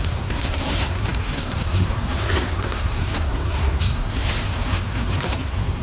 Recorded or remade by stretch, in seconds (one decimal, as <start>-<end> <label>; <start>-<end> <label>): 0.0-5.8 remade